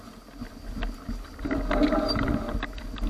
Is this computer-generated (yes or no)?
no